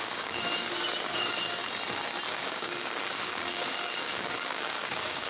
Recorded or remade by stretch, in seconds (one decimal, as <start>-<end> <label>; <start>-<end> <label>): 0.0-1.6 remade; 1.6-2.3 recorded; 2.3-5.3 remade